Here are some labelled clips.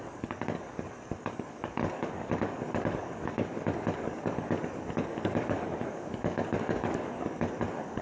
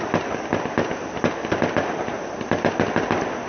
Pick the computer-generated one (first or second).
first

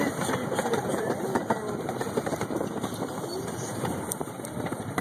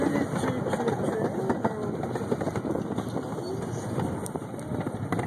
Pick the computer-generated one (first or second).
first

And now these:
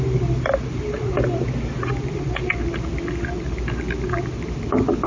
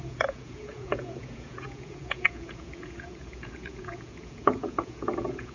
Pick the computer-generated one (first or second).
second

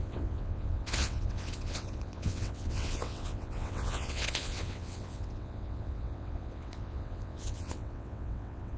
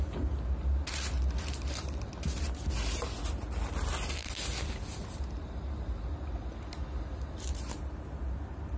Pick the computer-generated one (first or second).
first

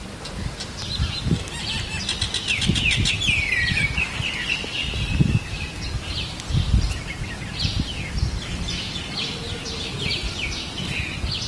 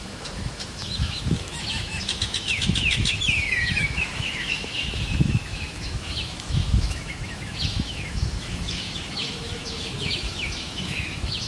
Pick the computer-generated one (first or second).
second